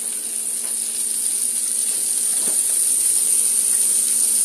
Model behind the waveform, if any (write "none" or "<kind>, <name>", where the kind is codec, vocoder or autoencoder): none